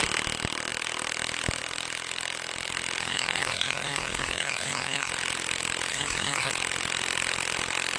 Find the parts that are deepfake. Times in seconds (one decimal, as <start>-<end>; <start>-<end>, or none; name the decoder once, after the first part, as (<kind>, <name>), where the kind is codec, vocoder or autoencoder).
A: 3.0-5.1 (codec, SNAC); 5.9-6.5